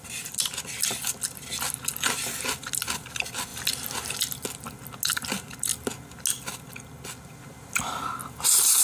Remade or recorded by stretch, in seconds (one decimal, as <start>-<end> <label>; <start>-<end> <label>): 0.0-8.8 recorded